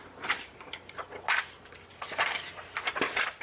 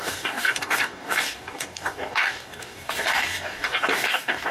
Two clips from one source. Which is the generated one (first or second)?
second